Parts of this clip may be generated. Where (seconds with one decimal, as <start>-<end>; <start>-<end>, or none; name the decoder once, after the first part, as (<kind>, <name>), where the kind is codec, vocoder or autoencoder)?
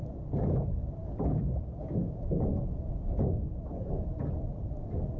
none